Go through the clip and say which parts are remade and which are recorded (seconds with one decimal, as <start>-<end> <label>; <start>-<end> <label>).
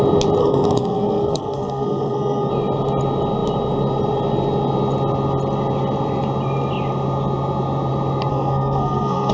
0.0-0.4 recorded; 0.4-2.5 remade; 2.5-8.3 recorded; 8.3-9.3 remade